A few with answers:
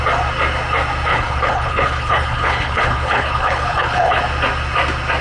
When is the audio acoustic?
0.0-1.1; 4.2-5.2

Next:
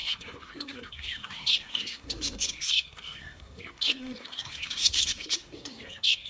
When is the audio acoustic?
none

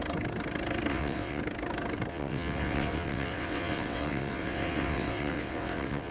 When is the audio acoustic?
0.0-0.9; 1.4-2.1